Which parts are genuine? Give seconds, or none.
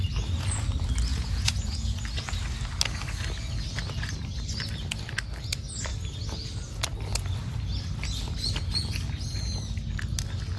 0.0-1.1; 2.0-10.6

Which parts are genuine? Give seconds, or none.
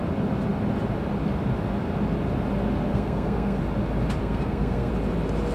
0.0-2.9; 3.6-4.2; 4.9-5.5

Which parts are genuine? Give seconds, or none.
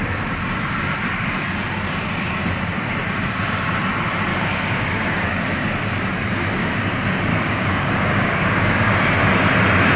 0.0-4.3; 5.4-7.3; 9.0-10.0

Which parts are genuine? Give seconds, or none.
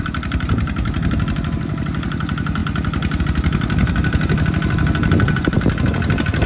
0.0-6.5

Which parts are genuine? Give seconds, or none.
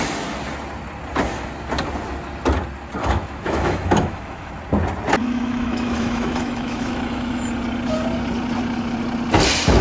0.0-3.0; 4.5-5.2; 7.5-9.8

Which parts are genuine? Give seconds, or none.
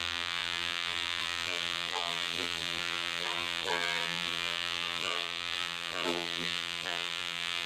none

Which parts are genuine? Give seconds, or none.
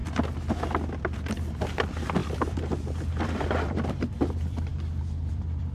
0.0-1.0; 4.7-5.2